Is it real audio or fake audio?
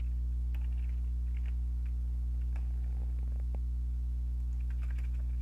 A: real